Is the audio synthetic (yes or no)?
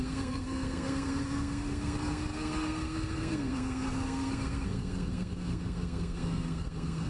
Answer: yes